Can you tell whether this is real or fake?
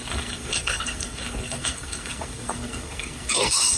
fake